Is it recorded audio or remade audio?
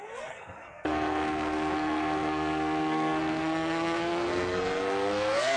remade